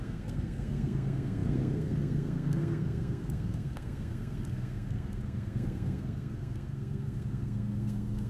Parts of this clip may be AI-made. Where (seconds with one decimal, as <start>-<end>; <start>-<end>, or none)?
0.0-8.3